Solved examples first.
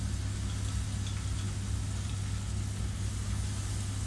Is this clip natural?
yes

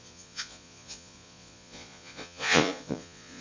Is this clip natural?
no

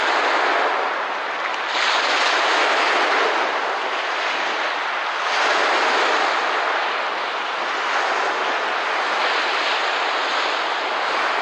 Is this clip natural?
yes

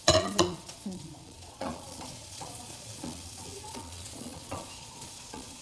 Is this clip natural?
no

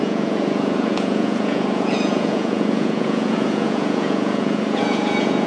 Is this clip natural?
no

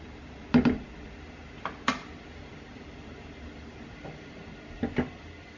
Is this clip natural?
yes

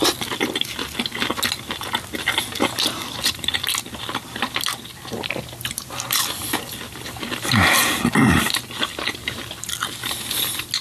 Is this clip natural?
yes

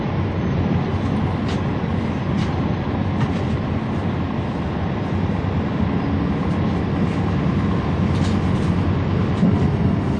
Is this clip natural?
yes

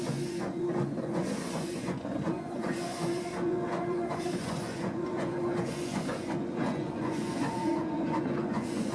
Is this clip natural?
no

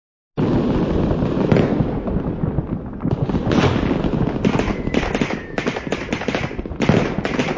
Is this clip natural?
yes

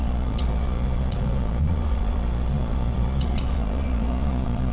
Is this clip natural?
no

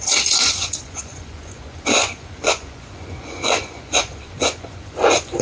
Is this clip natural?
no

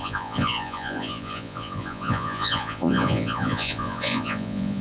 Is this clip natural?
no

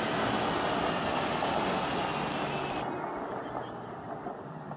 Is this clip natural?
yes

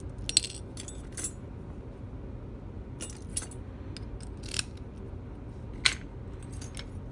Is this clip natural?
yes